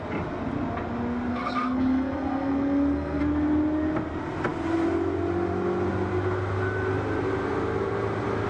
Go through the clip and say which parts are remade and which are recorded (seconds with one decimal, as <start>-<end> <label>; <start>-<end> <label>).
0.0-1.3 recorded; 1.3-3.2 remade; 3.2-8.5 recorded